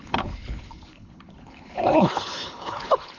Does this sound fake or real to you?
fake